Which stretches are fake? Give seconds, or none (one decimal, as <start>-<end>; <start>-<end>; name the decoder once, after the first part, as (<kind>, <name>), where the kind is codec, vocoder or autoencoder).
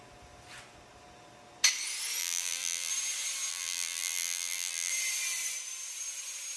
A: 2.2-2.9 (vocoder, BigVGAN v2); 3.5-4.9